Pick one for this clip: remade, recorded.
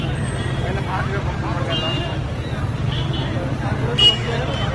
recorded